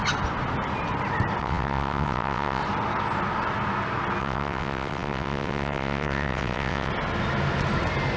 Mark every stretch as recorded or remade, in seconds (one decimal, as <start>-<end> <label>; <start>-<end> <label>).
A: 0.0-1.4 recorded; 1.4-2.6 remade; 2.6-4.2 recorded; 4.2-6.9 remade; 6.9-8.2 recorded